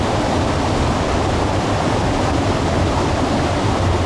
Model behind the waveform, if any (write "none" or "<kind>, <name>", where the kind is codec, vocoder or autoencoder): none